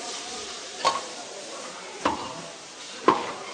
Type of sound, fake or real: fake